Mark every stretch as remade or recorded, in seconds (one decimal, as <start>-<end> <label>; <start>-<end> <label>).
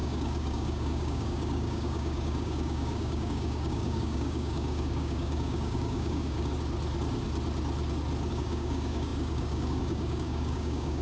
0.0-6.5 remade; 6.5-8.3 recorded; 8.3-11.0 remade